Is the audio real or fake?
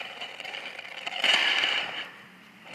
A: fake